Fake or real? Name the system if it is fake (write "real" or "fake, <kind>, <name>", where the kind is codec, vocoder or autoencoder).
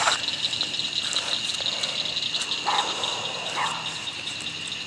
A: real